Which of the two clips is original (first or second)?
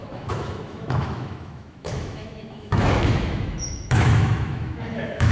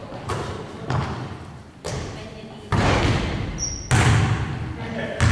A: second